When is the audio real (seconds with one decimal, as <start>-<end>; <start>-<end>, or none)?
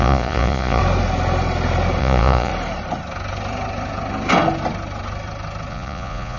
0.8-2.0; 2.5-5.7